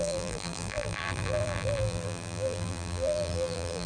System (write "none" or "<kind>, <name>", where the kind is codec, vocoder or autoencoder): vocoder, BigVGAN v2